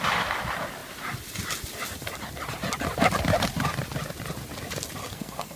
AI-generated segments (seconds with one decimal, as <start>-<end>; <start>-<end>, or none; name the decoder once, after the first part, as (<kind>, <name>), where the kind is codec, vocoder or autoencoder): 5.0-5.6 (codec, SNAC)

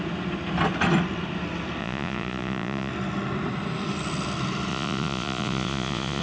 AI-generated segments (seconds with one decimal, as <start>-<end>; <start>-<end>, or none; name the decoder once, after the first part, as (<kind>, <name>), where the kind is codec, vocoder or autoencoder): 1.8-2.9 (vocoder, Vocos); 4.7-6.2

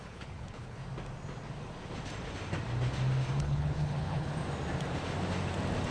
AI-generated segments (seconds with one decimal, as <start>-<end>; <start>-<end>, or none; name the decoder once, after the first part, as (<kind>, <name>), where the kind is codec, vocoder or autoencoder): 0.0-0.8 (codec, HILCodec); 3.4-4.3

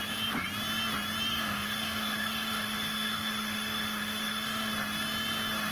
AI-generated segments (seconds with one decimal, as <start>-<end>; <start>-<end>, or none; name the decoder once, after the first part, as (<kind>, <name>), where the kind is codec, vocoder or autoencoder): 1.3-4.7 (autoencoder, DAC-VAE)